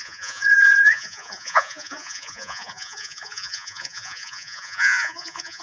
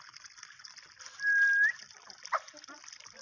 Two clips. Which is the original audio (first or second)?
second